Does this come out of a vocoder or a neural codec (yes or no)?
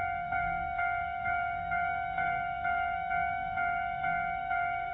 yes